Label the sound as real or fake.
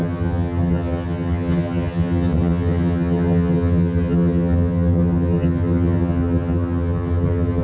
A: fake